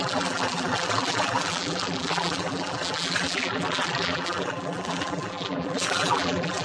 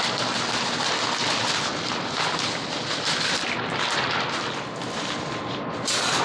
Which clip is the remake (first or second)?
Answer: first